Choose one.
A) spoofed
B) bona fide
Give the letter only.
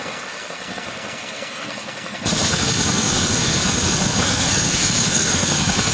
A